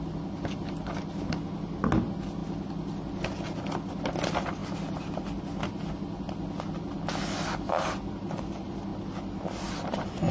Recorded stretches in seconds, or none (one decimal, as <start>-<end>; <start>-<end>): 0.0-10.3